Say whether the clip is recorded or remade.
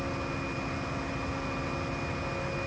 recorded